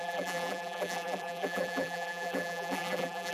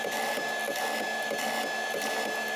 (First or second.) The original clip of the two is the second